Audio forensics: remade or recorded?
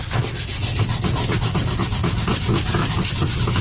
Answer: recorded